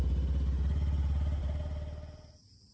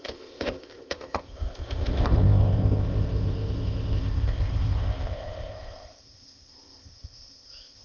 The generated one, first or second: second